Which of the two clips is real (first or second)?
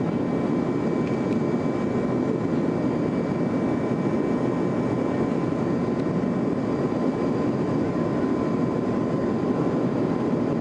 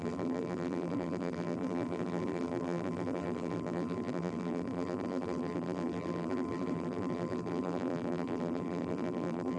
first